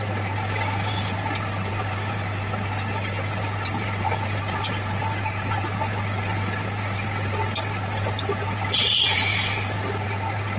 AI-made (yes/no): no